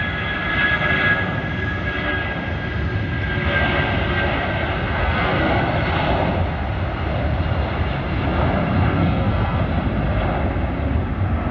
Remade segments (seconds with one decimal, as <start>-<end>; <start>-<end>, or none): 5.0-5.6; 9.0-9.6